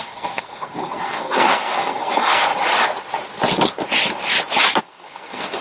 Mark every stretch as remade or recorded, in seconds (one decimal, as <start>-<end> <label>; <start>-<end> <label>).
0.0-2.5 remade; 2.5-4.8 recorded; 4.8-5.6 remade